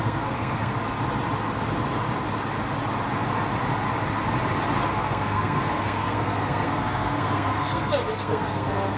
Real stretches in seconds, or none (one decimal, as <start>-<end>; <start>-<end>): 0.7-4.9